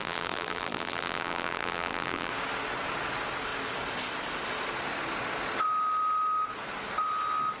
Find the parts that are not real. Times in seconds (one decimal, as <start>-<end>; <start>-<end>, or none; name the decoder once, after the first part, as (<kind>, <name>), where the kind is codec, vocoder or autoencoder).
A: 0.0-2.3 (vocoder, BigVGAN v2)